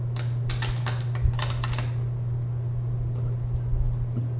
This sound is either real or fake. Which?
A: real